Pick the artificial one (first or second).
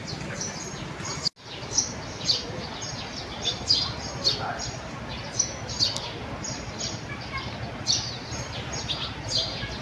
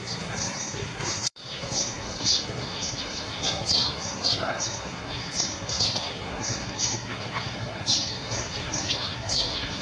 second